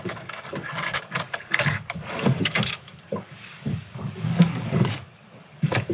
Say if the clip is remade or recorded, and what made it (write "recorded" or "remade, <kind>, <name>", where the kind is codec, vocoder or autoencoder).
remade, codec, DAC